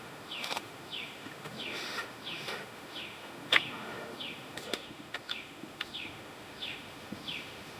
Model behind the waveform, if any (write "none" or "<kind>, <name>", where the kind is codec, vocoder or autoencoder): autoencoder, DAC-VAE